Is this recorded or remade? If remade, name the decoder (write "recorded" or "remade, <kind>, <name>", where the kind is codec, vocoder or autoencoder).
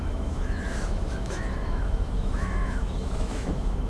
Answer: remade, autoencoder, DAC-VAE